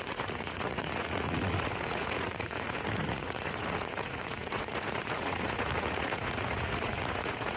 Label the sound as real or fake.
fake